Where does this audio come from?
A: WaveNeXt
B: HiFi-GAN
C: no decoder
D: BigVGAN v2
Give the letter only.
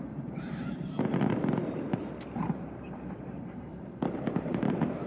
D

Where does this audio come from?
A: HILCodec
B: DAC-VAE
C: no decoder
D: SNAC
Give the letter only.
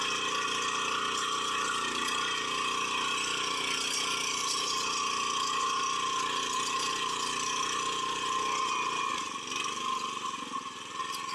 C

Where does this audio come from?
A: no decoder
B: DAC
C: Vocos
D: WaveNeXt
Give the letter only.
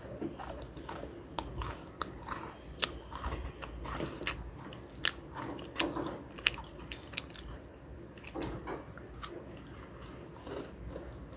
A